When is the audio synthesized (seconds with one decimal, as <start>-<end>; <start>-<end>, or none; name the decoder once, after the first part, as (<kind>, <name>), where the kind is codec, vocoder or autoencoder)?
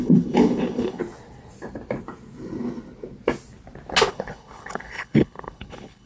0.0-1.0 (codec, HILCodec); 4.1-6.1